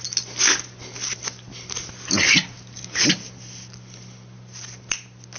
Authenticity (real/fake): real